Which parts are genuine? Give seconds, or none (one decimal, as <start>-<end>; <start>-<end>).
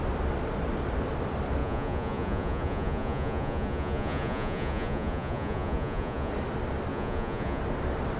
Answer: 0.0-1.6; 6.3-6.9; 7.6-8.2